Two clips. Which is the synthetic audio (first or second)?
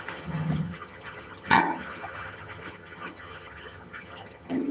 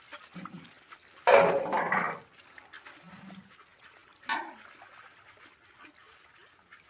first